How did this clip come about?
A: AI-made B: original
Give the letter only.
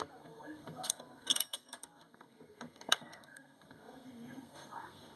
A